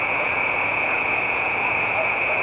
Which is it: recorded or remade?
remade